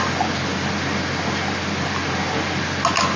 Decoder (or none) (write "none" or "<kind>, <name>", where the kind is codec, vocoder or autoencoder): none